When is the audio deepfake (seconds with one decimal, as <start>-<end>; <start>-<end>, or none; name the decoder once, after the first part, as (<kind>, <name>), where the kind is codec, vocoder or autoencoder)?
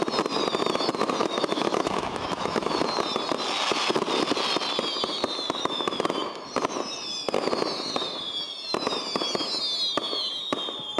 1.2-2.7 (autoencoder, DAC-VAE)